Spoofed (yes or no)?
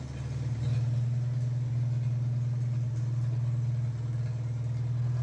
no